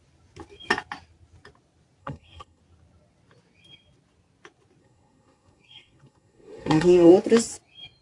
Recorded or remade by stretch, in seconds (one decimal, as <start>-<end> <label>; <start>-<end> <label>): 0.0-2.0 recorded; 2.0-2.6 remade; 2.6-4.8 recorded; 4.8-7.1 remade; 7.1-8.0 recorded